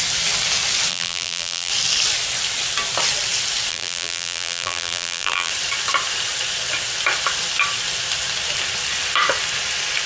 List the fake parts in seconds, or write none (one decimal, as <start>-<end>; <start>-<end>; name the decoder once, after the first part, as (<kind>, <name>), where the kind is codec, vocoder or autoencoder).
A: 0.9-1.7 (vocoder, BigVGAN v2); 3.7-5.5